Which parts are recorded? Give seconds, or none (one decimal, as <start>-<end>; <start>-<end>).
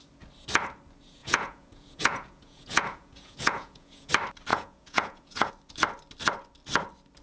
0.0-1.2; 4.1-4.5; 5.5-7.2